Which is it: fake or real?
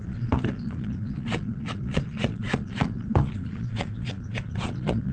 fake